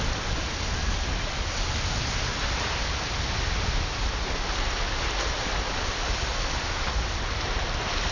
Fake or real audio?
real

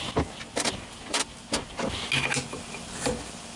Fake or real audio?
real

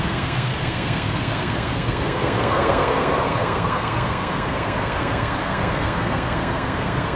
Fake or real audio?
fake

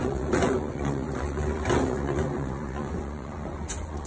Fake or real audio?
fake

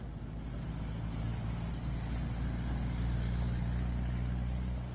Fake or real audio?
real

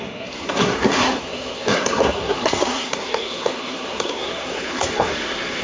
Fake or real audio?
fake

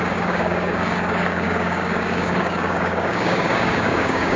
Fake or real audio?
fake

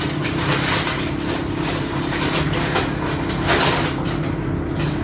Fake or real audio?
real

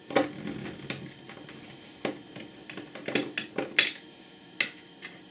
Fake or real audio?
real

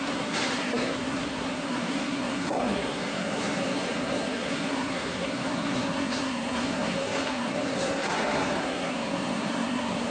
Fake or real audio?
fake